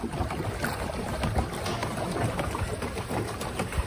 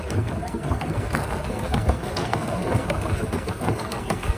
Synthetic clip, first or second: second